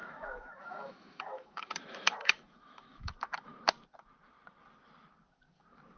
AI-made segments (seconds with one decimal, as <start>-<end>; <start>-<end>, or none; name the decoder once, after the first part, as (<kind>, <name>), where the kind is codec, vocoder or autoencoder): 0.0-3.6 (autoencoder, DAC-VAE)